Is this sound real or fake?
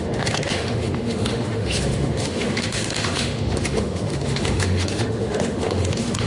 fake